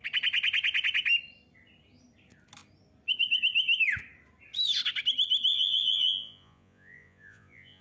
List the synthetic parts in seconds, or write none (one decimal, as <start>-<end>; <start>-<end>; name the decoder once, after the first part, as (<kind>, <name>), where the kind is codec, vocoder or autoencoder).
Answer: 5.5-7.8 (vocoder, Vocos)